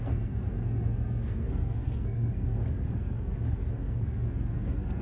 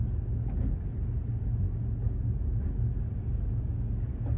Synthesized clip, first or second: first